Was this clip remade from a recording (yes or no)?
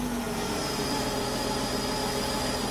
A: no